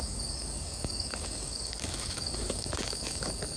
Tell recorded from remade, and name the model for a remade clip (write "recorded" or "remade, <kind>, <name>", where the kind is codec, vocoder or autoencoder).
remade, codec, DAC